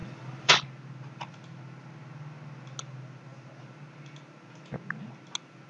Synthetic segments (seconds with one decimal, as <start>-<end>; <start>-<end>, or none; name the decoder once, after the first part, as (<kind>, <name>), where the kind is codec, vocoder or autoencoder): 0.0-0.5 (vocoder, BigVGAN v2)